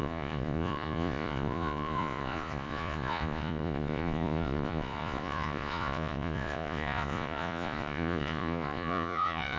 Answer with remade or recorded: remade